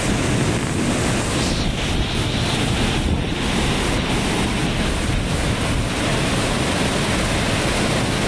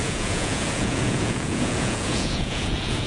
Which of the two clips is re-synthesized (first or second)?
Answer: second